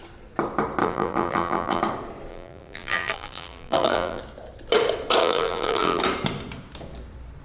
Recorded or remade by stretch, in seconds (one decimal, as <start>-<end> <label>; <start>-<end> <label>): 0.0-0.8 recorded; 0.8-1.8 remade; 1.8-2.3 recorded; 2.3-4.2 remade; 4.2-5.2 recorded; 5.2-6.0 remade; 6.0-7.4 recorded